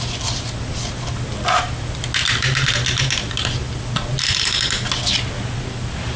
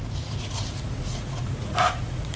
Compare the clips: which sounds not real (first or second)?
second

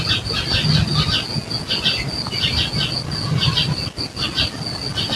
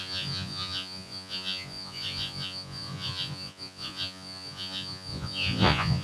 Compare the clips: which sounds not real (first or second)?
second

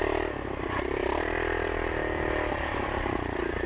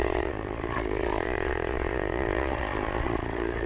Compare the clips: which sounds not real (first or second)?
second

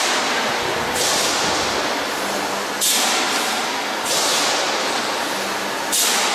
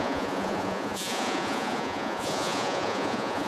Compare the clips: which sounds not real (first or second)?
second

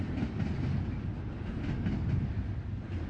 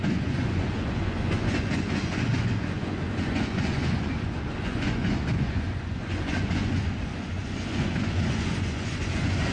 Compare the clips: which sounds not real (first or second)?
second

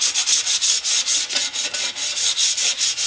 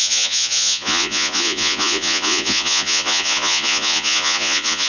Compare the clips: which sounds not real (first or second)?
second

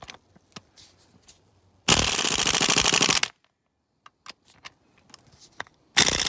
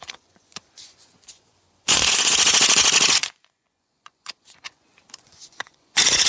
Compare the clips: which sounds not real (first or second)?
second